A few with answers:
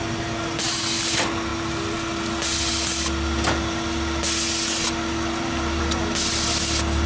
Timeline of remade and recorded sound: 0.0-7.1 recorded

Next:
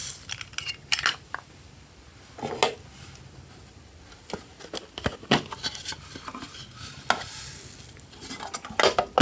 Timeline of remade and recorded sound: 0.0-9.2 recorded

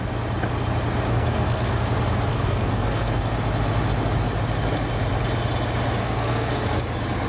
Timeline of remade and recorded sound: 0.0-1.1 recorded; 1.1-1.8 remade; 1.8-2.3 recorded; 2.3-3.3 remade; 3.3-6.0 recorded; 6.0-6.8 remade; 6.8-7.3 recorded

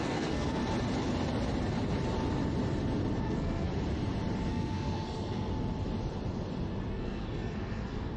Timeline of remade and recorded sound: 0.0-0.6 remade; 0.6-3.2 recorded; 3.2-3.7 remade; 3.7-4.5 recorded; 4.5-5.5 remade; 5.5-6.9 recorded; 6.9-8.2 remade

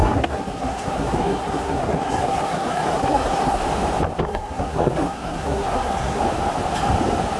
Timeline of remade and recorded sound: 0.0-3.6 remade; 3.6-4.2 recorded; 4.2-6.2 remade; 6.2-7.4 recorded

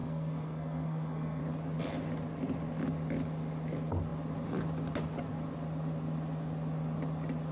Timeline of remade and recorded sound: 0.0-1.4 remade; 1.4-7.5 recorded

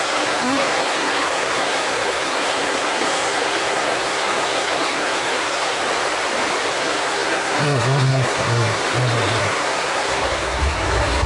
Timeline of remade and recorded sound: 0.0-5.8 remade; 5.8-6.7 recorded; 6.7-8.8 remade; 8.8-9.4 recorded; 9.4-11.3 remade